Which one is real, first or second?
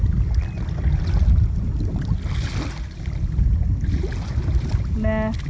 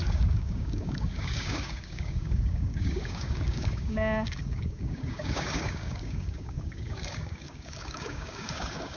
first